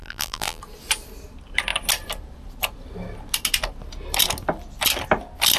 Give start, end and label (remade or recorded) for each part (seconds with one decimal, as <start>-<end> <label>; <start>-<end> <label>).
0.0-0.6 remade; 0.6-5.6 recorded